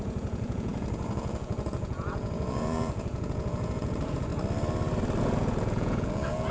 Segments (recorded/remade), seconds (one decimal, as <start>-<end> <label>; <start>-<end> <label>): 0.0-4.3 remade; 4.3-5.2 recorded; 5.2-6.5 remade

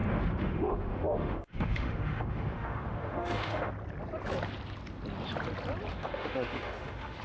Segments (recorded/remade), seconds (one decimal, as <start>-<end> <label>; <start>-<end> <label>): 0.0-3.7 remade; 3.7-5.9 recorded; 5.9-7.2 remade

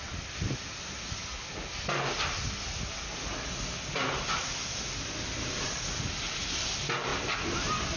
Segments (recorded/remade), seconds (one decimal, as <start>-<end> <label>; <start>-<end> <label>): 0.0-8.0 recorded

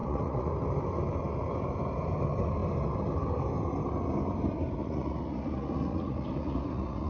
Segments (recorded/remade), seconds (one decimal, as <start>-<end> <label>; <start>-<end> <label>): 0.0-0.5 remade; 0.5-4.8 recorded; 4.8-7.1 remade

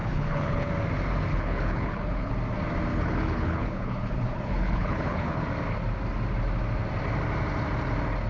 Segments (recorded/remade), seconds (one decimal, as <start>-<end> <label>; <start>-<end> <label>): 0.0-0.7 remade; 0.7-1.3 recorded; 1.3-2.3 remade; 2.3-2.9 recorded; 2.9-5.4 remade; 5.4-8.3 recorded